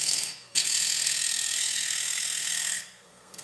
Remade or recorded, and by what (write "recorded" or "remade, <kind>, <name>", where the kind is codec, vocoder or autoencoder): remade, codec, SNAC